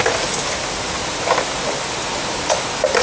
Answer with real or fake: real